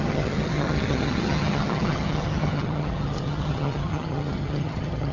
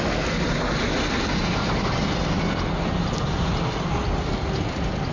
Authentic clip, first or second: second